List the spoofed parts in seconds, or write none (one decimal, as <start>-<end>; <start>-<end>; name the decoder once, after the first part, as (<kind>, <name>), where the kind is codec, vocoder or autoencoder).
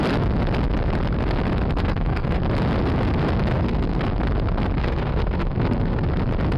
1.8-2.4 (codec, SNAC); 3.5-4.0; 4.8-6.0